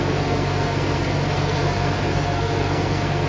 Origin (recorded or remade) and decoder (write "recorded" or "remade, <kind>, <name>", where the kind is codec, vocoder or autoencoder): remade, codec, SNAC